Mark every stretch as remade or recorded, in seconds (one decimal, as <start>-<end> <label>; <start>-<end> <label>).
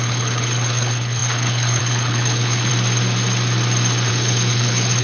0.0-2.7 remade; 2.7-4.1 recorded; 4.1-5.0 remade